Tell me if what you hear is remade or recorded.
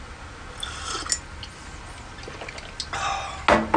recorded